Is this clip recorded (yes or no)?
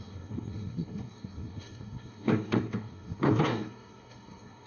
no